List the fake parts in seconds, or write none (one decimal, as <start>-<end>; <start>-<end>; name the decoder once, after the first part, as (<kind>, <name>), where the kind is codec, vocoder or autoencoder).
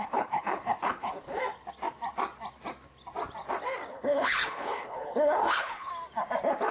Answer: 0.0-1.4 (codec, HILCodec); 3.9-5.9